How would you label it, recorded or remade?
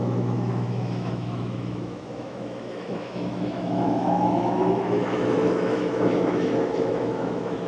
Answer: remade